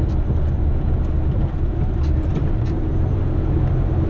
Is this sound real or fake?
fake